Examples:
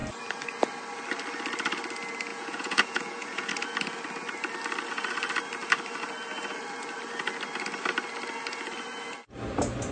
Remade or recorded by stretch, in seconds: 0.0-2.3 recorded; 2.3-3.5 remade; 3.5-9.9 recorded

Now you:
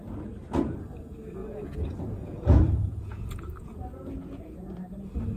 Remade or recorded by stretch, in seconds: 0.0-1.4 recorded; 1.4-4.4 remade; 4.4-5.4 recorded

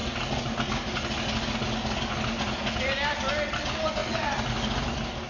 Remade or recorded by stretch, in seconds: 0.0-5.3 recorded

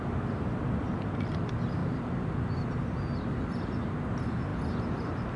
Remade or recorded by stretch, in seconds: 0.0-5.4 recorded